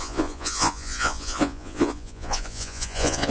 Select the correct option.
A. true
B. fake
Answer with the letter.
B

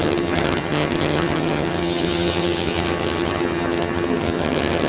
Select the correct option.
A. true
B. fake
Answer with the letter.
B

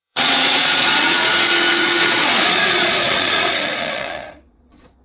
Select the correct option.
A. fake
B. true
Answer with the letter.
A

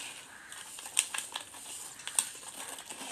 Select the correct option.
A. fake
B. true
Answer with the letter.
B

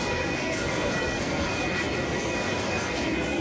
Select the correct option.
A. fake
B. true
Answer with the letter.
A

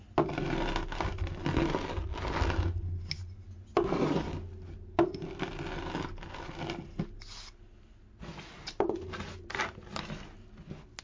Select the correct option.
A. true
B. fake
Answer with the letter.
A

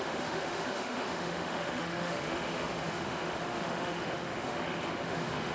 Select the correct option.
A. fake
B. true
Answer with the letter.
A